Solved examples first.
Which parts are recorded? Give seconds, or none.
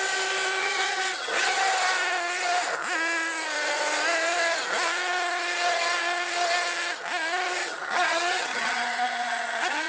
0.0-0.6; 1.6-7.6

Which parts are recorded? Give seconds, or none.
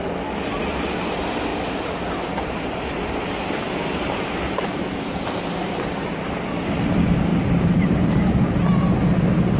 0.0-1.5; 6.2-7.3; 8.3-9.6